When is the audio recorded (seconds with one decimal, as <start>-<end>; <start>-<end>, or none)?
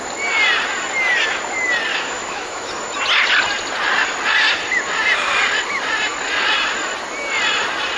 0.0-1.9; 2.7-8.0